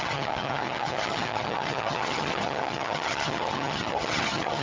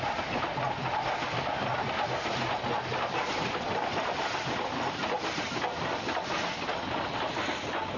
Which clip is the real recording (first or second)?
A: second